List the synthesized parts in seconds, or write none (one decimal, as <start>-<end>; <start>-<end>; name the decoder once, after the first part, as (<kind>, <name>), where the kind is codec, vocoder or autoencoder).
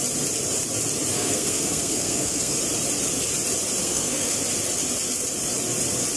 1.1-2.6 (codec, SNAC); 3.8-4.4